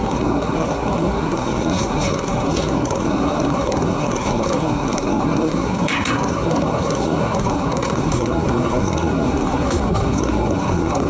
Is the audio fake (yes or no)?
yes